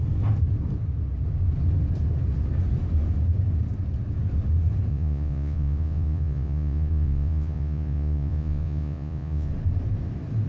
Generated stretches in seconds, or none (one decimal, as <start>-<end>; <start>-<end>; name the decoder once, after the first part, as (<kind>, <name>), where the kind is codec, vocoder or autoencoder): 4.9-9.5 (vocoder, Vocos)